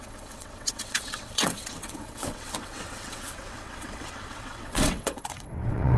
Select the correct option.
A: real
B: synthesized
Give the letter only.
B